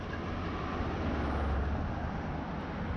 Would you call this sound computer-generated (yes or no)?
no